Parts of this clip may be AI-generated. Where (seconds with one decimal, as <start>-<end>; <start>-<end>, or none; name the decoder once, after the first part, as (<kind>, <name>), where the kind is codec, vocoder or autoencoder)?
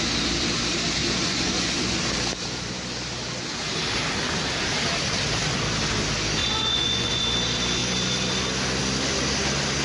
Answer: 1.0-2.0 (vocoder, Vocos); 6.4-7.2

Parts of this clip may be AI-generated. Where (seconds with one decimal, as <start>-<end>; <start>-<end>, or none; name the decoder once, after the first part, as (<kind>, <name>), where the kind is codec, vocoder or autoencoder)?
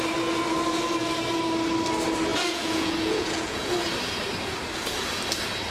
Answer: 2.3-3.7 (vocoder, Vocos)